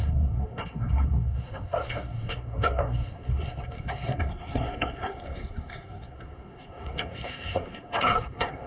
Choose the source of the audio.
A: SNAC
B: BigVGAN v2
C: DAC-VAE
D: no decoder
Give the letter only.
A